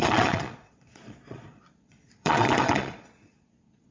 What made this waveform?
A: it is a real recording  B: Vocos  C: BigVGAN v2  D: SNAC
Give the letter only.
B